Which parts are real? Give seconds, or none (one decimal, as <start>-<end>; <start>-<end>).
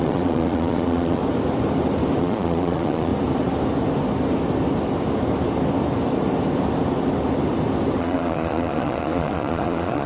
1.2-2.2; 3.1-8.0